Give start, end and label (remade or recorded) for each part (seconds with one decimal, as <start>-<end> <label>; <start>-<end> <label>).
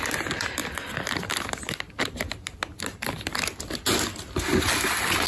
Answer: 0.0-5.3 recorded